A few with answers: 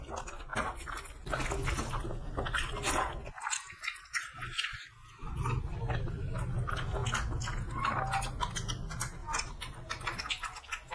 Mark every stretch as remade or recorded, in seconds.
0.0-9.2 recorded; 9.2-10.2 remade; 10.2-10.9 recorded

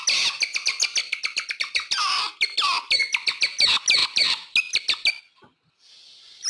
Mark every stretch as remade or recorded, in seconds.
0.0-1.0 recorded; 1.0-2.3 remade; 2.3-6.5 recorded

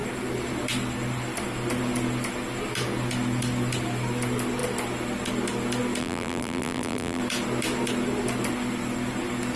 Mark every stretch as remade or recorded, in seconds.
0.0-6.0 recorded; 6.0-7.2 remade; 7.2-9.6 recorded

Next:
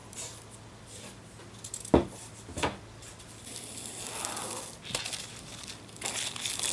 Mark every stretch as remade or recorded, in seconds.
0.0-6.7 recorded